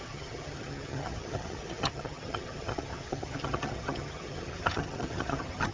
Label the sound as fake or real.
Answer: fake